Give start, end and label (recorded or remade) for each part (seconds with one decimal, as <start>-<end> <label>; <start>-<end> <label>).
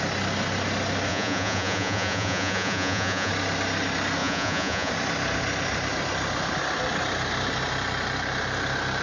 0.0-1.1 recorded; 1.1-3.3 remade; 3.3-4.2 recorded; 4.2-4.9 remade; 4.9-9.0 recorded